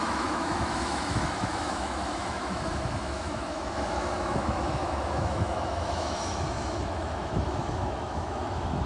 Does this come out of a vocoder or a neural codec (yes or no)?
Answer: yes